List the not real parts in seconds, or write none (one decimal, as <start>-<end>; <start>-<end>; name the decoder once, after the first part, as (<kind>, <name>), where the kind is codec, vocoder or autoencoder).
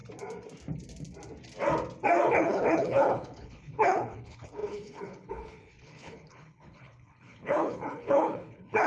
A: 2.3-8.9 (codec, HILCodec)